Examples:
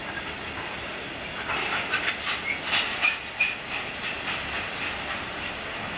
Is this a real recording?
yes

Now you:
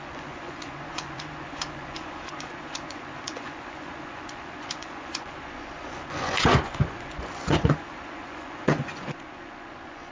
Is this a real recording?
no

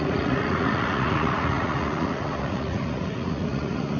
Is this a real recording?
no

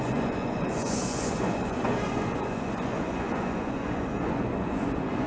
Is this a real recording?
no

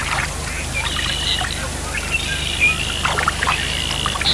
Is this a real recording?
yes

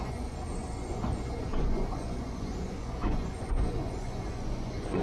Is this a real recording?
no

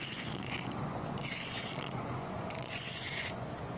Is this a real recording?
no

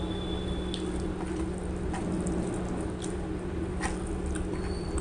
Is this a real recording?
yes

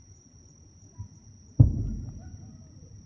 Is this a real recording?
yes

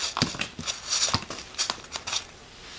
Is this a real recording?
yes